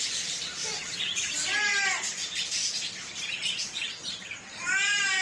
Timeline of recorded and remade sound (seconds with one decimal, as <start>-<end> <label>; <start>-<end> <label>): 0.0-1.5 remade; 1.5-2.0 recorded; 2.0-5.2 remade